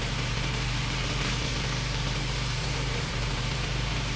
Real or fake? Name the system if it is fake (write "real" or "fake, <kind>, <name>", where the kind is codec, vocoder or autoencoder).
fake, vocoder, BigVGAN v2